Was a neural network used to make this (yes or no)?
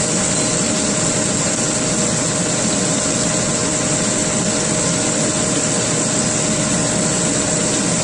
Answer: no